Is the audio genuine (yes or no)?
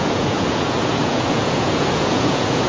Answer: no